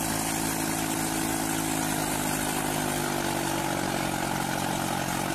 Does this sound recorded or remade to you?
recorded